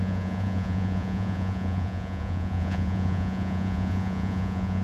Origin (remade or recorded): remade